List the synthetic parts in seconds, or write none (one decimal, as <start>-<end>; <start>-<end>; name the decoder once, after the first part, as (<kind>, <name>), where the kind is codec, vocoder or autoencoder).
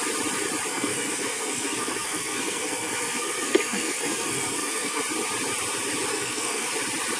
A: 0.7-5.0 (codec, SNAC); 6.1-6.7